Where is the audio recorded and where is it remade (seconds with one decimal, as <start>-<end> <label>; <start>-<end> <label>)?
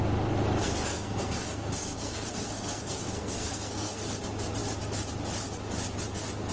0.0-0.6 recorded; 0.6-4.0 remade; 4.0-6.5 recorded